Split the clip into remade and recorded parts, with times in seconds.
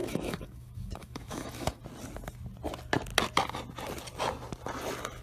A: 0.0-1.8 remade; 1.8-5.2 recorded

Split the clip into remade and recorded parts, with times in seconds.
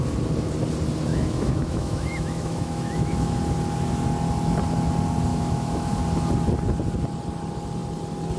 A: 0.0-1.1 recorded; 1.1-3.4 remade; 3.4-5.3 recorded; 5.3-5.9 remade; 5.9-8.4 recorded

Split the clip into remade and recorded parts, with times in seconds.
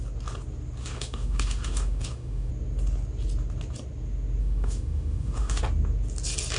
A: 0.0-0.8 recorded; 0.8-2.5 remade; 2.5-4.4 recorded; 4.4-5.6 remade; 5.6-6.6 recorded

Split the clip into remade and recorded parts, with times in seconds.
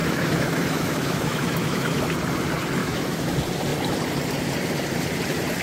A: 0.0-2.0 remade; 2.0-2.8 recorded; 2.8-3.3 remade; 3.3-5.6 recorded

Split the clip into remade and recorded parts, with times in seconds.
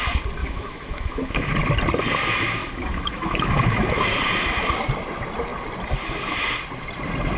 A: 0.0-0.4 recorded; 0.4-1.5 remade; 1.5-2.6 recorded; 2.6-4.0 remade; 4.0-7.4 recorded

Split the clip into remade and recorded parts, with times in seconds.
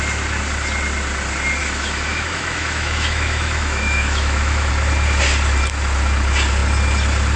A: 0.0-1.6 recorded; 1.6-4.7 remade; 4.7-7.4 recorded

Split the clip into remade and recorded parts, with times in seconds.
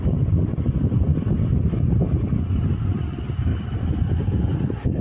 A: 0.0-5.0 recorded